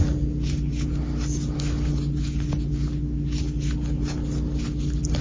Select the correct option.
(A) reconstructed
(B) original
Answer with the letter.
B